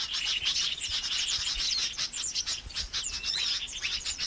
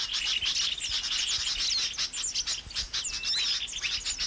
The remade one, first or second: first